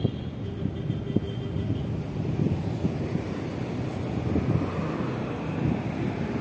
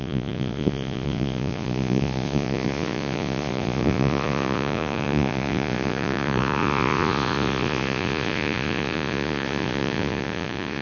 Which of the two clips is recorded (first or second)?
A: first